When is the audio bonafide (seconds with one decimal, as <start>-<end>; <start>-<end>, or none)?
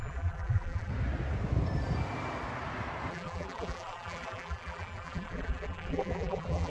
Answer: 0.9-3.1